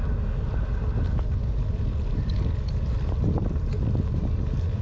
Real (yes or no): yes